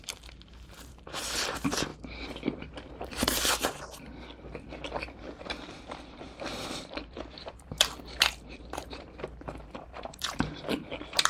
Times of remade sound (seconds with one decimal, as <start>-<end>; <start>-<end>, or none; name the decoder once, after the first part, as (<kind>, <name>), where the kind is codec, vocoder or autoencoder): 0.0-4.1 (vocoder, BigVGAN v2); 4.9-11.3